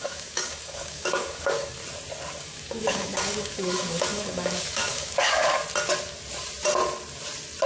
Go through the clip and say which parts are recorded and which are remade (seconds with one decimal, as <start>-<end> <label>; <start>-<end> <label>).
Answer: 0.0-1.8 remade; 1.8-2.4 recorded; 2.4-5.6 remade; 5.6-7.7 recorded